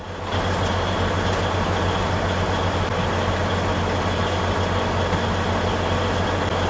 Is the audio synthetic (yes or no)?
no